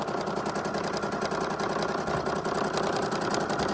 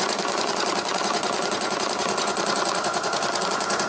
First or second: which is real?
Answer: first